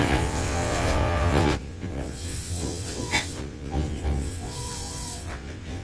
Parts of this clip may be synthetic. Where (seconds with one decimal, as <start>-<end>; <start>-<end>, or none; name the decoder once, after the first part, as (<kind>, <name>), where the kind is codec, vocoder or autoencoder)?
0.0-5.8 (vocoder, WaveNeXt)